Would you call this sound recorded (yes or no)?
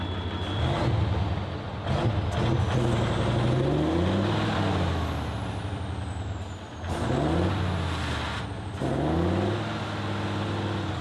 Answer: yes